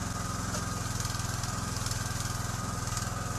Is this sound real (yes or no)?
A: yes